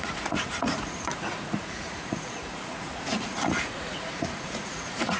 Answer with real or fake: fake